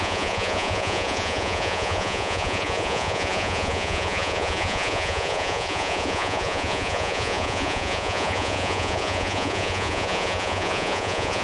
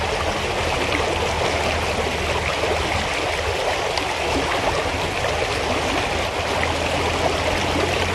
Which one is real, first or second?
second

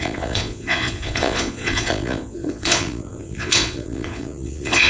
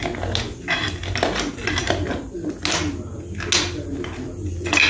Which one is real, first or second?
second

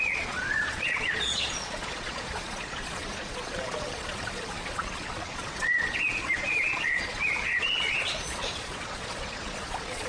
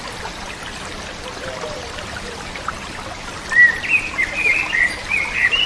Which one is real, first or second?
second